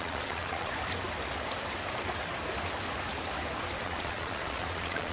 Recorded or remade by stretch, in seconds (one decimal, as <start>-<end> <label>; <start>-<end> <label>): 0.0-0.7 remade; 0.7-3.8 recorded; 3.8-5.1 remade